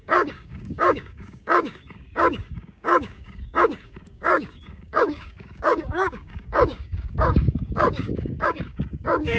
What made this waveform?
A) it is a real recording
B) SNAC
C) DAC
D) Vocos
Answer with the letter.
C